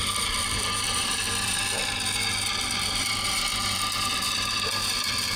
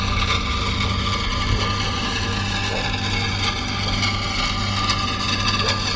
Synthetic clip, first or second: first